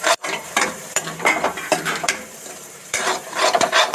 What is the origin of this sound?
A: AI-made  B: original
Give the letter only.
A